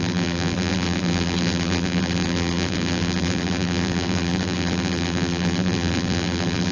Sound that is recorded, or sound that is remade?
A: remade